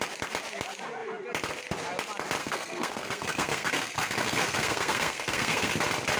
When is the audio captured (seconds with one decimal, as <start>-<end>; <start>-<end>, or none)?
0.0-2.4; 5.7-6.2